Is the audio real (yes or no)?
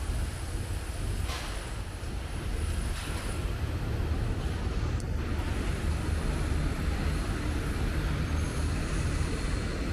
yes